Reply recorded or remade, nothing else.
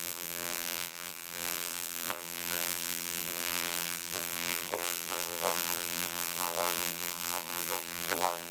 remade